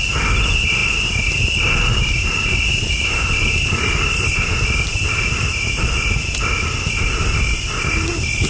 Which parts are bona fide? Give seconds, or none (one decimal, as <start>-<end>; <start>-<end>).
0.0-8.5